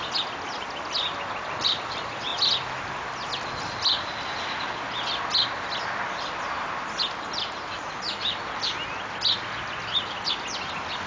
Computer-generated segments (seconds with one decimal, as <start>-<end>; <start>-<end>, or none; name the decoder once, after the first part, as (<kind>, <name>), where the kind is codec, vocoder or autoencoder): none